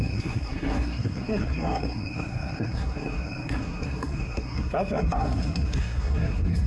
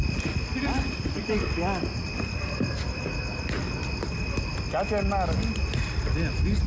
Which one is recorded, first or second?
second